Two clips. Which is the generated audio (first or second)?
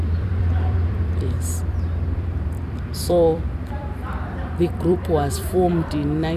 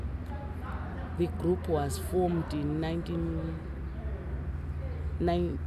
first